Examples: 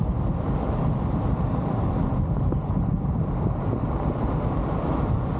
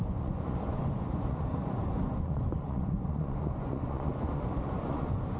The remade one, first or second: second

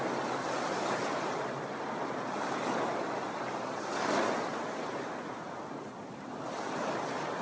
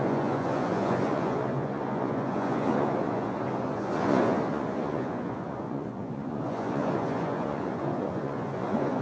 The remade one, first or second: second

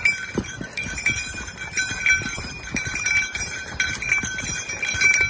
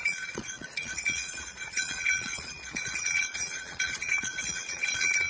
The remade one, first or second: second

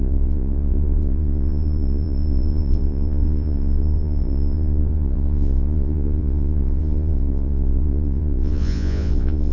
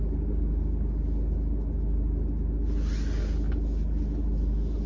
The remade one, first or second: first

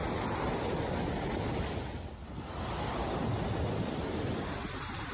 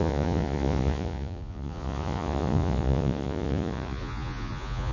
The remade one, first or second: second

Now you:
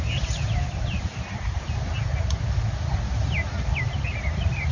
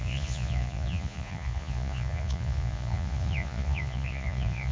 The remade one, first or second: second